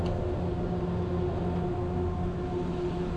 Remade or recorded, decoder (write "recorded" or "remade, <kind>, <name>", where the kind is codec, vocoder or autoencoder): recorded